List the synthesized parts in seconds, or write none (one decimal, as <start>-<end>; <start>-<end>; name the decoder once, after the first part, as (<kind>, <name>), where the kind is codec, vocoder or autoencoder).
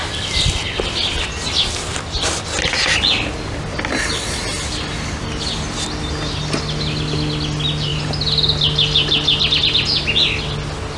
none